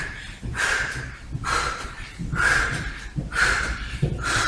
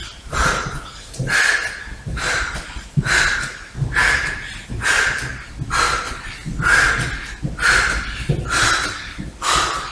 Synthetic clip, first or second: first